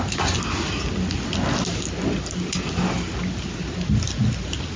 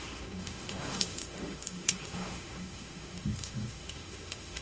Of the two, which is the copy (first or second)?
second